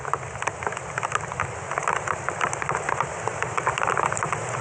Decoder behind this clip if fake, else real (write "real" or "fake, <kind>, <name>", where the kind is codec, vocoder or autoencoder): fake, vocoder, BigVGAN v2